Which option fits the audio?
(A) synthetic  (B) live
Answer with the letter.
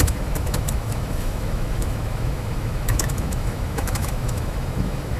A